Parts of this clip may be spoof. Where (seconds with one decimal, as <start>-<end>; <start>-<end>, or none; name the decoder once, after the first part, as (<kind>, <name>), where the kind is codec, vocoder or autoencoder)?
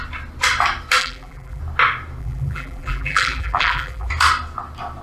1.0-1.6 (vocoder, BigVGAN v2); 2.2-4.1